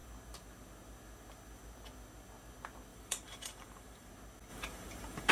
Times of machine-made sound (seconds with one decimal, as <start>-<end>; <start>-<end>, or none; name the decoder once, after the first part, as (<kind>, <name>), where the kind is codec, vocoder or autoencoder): 2.9-4.1 (vocoder, BigVGAN v2); 4.5-5.3

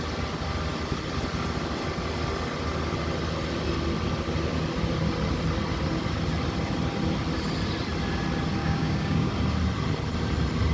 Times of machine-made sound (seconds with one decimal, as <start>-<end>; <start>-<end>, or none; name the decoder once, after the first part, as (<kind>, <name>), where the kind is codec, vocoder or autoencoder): 8.6-9.3 (codec, DAC)

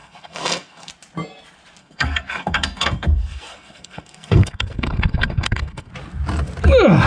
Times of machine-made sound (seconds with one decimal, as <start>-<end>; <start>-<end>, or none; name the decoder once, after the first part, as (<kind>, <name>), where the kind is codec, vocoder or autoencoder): 0.0-0.9 (codec, SNAC); 1.8-5.9